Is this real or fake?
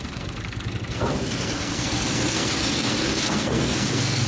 fake